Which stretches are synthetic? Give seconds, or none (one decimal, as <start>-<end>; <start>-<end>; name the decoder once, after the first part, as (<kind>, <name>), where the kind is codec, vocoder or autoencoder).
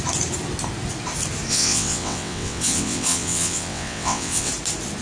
1.5-4.5 (vocoder, WaveNeXt)